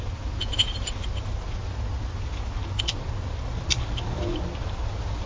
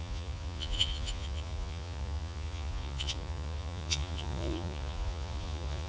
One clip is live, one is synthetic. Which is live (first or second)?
first